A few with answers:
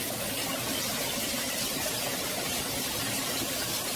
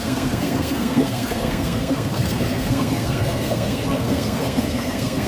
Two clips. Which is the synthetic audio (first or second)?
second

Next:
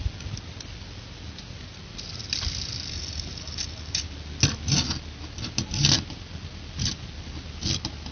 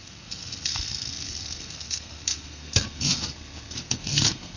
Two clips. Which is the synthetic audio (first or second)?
second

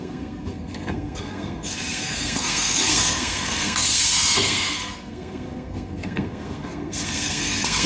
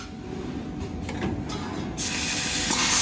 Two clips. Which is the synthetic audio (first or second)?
first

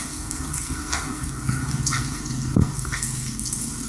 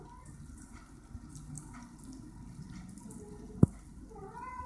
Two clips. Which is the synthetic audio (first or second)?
first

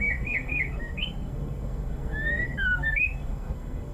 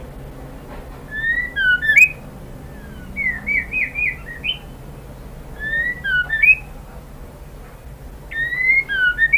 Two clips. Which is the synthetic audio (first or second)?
first